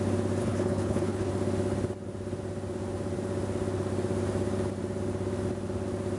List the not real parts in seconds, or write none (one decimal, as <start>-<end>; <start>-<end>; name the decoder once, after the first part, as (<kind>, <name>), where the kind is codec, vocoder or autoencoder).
0.4-1.3 (codec, HILCodec)